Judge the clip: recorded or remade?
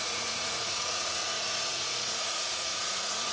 remade